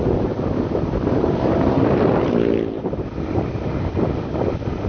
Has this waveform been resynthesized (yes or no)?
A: no